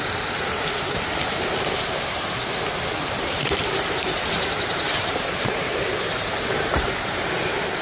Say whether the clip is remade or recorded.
remade